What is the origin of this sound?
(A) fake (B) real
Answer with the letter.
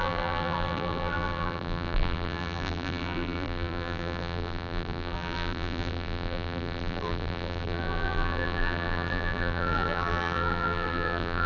A